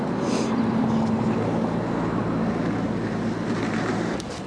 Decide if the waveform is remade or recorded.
recorded